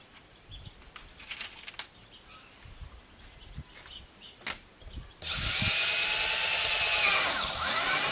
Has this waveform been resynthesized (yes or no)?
no